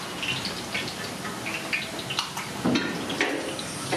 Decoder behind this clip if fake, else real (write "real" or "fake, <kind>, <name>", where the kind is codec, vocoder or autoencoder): real